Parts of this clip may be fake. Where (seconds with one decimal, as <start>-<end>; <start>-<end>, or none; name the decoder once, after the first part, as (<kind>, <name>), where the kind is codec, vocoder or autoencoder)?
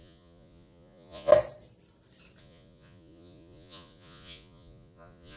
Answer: 0.0-1.3 (vocoder, Vocos); 2.4-5.4